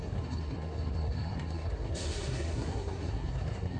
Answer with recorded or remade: remade